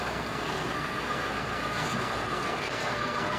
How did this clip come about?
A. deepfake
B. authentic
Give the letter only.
A